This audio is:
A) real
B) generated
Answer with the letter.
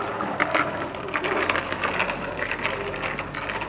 A